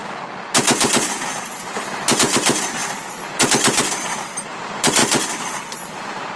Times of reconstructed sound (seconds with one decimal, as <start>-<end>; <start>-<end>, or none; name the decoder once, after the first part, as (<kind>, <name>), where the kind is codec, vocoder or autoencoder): 0.8-6.4 (vocoder, BigVGAN v2)